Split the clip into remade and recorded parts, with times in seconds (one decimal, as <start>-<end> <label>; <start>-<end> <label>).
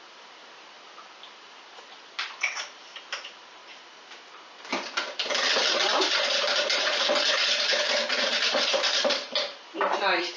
0.0-3.6 remade; 3.6-8.3 recorded; 8.3-10.4 remade